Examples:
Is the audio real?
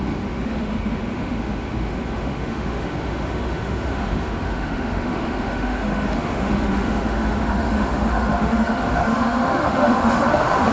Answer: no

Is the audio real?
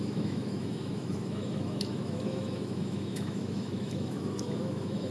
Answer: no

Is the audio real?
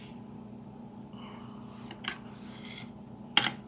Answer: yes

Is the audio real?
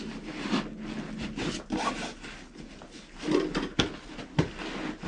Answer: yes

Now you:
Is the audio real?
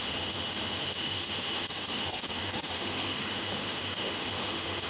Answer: no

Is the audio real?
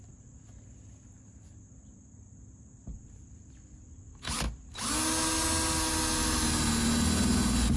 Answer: yes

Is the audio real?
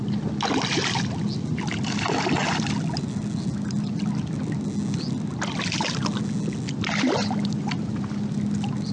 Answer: yes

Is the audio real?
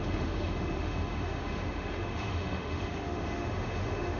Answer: no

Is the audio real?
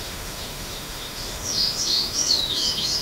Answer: no